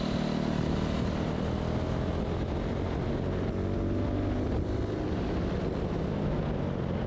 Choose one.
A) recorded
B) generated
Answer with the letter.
A